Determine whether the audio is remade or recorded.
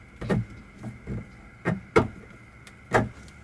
recorded